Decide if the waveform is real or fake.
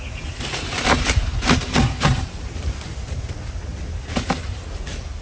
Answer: real